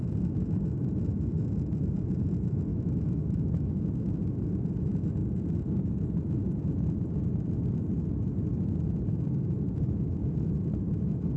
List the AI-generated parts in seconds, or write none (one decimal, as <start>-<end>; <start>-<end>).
2.7-3.7